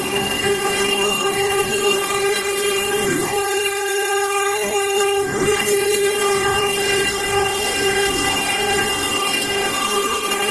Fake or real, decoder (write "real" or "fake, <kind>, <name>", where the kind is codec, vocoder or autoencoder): fake, codec, SNAC